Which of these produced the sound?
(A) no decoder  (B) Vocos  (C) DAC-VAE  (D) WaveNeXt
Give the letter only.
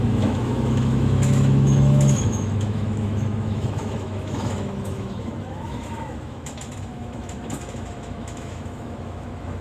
C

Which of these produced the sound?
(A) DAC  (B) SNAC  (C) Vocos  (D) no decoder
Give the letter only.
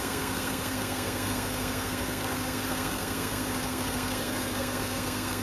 B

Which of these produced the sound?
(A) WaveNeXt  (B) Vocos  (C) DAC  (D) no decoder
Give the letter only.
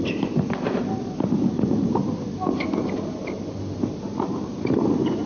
D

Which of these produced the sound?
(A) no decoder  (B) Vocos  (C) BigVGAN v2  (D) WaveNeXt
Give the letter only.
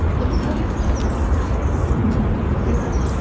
A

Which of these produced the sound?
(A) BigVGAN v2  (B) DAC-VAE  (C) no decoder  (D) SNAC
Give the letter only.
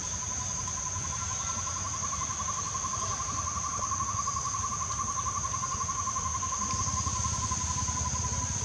C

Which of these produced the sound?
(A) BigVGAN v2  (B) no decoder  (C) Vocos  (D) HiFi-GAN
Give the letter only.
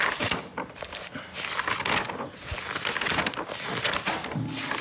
B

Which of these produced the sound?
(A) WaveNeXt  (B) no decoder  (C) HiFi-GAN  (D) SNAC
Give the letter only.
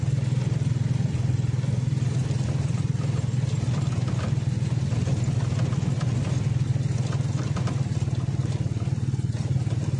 B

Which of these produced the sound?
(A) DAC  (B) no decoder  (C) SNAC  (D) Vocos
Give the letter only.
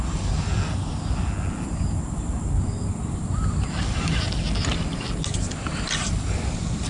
B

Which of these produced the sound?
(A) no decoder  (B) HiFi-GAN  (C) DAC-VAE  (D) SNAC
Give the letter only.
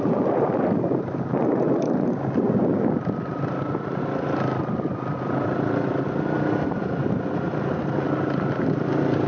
A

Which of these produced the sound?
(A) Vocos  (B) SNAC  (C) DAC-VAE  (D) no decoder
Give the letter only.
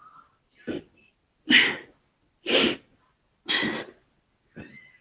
D